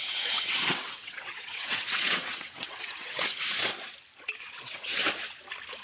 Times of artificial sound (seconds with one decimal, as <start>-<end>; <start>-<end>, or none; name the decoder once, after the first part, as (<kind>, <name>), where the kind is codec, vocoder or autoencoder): 0.0-3.7 (vocoder, WaveNeXt); 4.4-5.0